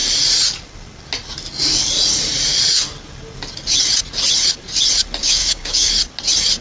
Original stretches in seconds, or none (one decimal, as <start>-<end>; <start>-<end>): 0.0-5.2; 5.9-6.6